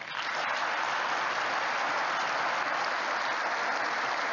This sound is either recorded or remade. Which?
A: recorded